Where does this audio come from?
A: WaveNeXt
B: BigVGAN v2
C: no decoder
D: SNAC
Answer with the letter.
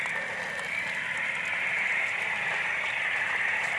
C